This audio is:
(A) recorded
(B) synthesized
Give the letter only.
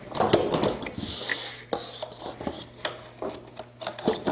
A